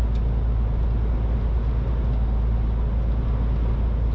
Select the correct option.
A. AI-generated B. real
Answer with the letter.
B